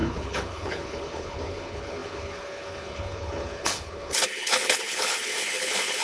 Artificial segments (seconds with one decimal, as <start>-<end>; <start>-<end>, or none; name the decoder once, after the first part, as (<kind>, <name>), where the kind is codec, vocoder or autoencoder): 0.0-6.0 (codec, HILCodec)